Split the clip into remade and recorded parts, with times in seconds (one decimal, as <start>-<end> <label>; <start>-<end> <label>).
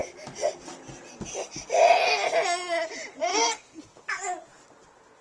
0.0-3.3 recorded; 3.3-3.8 remade; 3.8-5.2 recorded